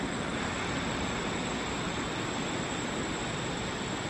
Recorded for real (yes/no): yes